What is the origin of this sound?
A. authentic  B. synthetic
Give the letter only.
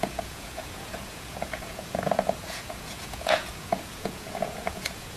B